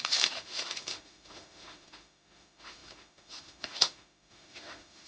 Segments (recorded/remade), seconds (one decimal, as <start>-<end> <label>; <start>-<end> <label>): 0.0-5.1 remade